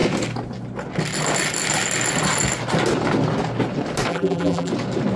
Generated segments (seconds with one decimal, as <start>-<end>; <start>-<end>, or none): 4.1-4.7